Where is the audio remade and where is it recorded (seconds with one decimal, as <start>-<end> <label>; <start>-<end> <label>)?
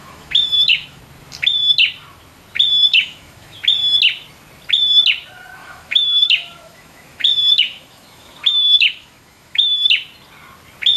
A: 0.0-1.0 remade; 1.0-2.9 recorded; 2.9-3.6 remade; 3.6-5.6 recorded; 5.6-9.9 remade; 9.9-11.0 recorded